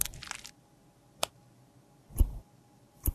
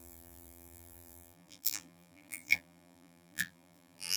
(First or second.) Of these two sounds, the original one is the first